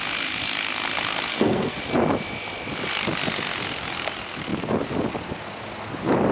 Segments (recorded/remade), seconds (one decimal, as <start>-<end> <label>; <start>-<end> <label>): 0.0-1.3 recorded; 1.3-1.8 remade; 1.8-6.3 recorded